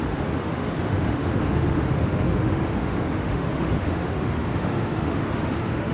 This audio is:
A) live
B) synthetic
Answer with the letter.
B